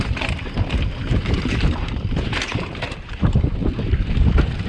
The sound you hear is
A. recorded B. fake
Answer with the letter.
B